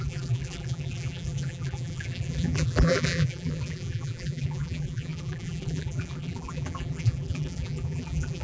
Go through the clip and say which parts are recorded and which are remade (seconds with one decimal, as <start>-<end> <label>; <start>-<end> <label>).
0.0-8.4 remade